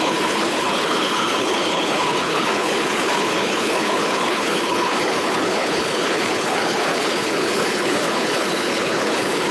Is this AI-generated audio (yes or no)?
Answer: yes